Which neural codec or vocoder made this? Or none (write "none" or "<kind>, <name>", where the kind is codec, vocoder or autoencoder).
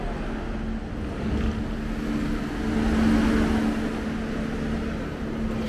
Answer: none